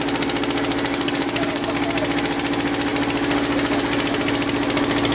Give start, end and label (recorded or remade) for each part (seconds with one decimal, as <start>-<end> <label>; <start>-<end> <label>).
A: 0.0-0.9 recorded; 0.9-1.7 remade; 1.7-5.1 recorded